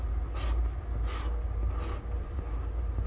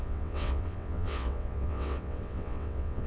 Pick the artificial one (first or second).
second